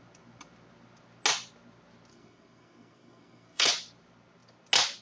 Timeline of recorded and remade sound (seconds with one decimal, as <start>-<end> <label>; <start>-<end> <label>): 0.0-2.1 recorded; 2.1-3.7 remade; 3.7-5.0 recorded

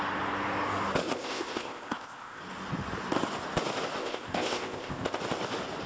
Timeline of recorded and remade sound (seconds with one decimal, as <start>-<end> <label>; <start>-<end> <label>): 0.0-1.0 recorded; 1.0-2.4 remade; 2.4-4.0 recorded; 4.0-5.2 remade; 5.2-5.9 recorded

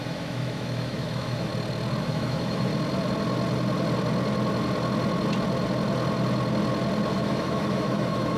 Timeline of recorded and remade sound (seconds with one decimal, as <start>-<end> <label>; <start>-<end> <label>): 0.0-1.5 remade; 1.5-2.0 recorded; 2.0-2.7 remade; 2.7-7.1 recorded; 7.1-8.4 remade

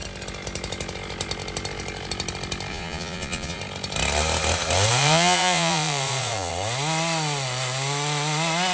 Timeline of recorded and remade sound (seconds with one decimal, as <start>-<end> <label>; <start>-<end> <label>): 0.0-2.7 recorded; 2.7-3.6 remade; 3.6-4.9 recorded; 4.9-6.5 remade; 6.5-8.7 recorded

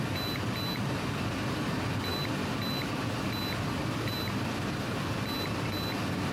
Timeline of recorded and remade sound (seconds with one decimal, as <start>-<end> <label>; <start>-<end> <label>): 0.0-6.3 recorded